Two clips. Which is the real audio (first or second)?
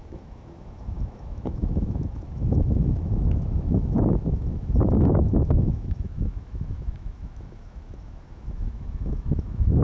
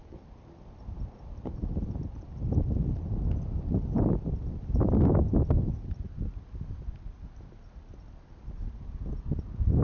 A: second